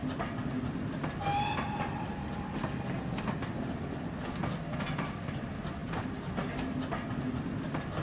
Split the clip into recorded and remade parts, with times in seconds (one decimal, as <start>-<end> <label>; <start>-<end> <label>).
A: 0.0-8.0 recorded